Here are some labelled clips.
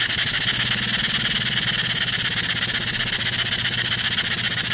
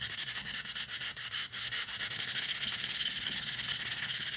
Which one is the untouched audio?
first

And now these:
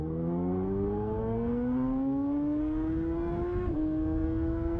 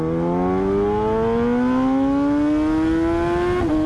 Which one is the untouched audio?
second